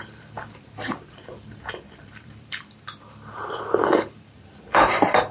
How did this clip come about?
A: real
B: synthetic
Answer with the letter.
B